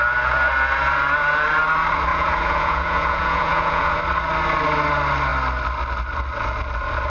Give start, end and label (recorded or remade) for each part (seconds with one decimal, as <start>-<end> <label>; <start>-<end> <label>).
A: 0.0-2.1 recorded; 2.1-4.0 remade; 4.0-7.1 recorded